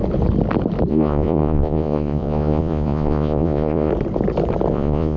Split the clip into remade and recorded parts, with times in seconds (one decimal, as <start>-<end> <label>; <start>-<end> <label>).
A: 0.0-0.9 recorded; 0.9-3.9 remade; 3.9-4.7 recorded; 4.7-5.2 remade